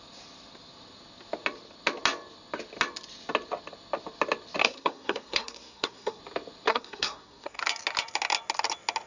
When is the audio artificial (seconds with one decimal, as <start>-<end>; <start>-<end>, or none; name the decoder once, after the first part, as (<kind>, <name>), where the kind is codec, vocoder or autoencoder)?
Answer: 4.6-6.2 (codec, SNAC); 6.7-7.6